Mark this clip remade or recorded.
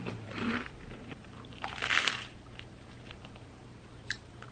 remade